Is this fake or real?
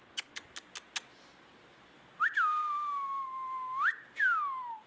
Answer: real